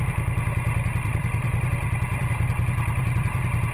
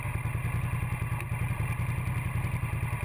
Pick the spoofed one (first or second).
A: first